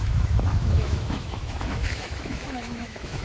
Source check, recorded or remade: remade